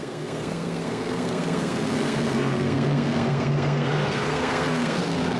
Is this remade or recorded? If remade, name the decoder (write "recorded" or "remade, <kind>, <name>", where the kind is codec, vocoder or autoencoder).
remade, codec, SNAC